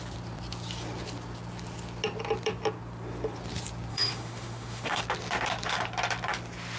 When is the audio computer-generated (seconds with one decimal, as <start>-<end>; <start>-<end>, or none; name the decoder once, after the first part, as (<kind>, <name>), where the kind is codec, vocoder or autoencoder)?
3.9-5.0 (autoencoder, DAC-VAE)